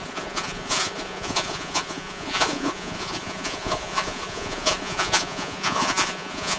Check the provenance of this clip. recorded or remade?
remade